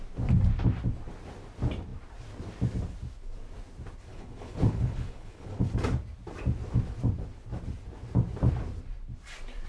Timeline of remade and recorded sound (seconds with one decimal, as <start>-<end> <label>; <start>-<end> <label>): 0.0-4.1 recorded; 4.1-5.6 remade; 5.6-9.7 recorded